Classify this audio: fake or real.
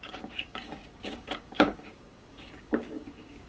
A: fake